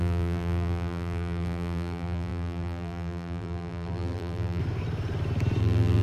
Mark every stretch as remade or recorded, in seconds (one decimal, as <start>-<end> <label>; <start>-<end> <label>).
0.0-4.6 remade; 4.6-5.6 recorded; 5.6-6.0 remade